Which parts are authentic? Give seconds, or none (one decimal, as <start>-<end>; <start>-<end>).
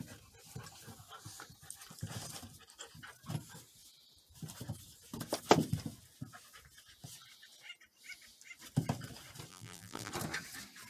0.0-9.5; 10.1-10.9